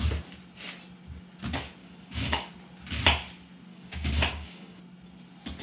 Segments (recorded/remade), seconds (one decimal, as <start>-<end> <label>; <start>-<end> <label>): 0.0-1.8 recorded; 1.8-2.5 remade; 2.5-3.7 recorded; 3.7-4.8 remade; 4.8-5.6 recorded